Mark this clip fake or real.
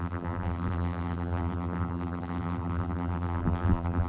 fake